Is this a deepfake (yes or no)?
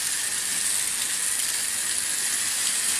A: no